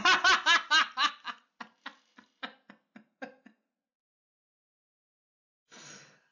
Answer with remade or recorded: recorded